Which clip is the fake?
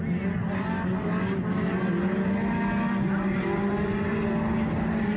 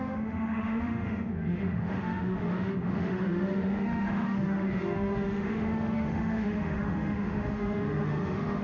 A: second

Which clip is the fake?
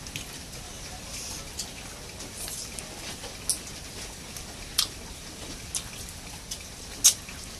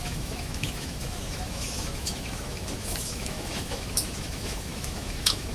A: second